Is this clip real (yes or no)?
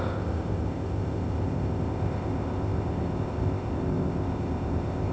no